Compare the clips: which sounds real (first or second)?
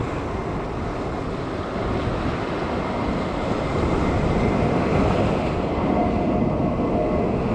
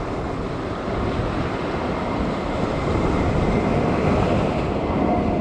first